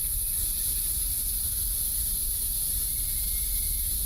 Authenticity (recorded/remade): remade